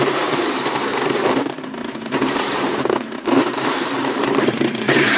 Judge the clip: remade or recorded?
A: remade